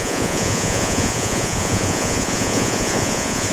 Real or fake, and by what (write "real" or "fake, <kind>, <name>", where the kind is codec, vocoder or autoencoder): fake, vocoder, Vocos